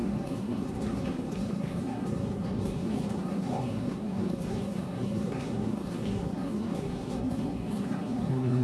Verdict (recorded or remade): remade